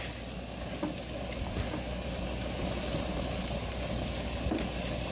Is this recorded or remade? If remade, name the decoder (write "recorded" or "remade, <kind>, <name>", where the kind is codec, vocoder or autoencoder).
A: recorded